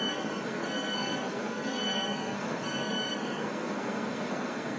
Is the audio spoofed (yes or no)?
yes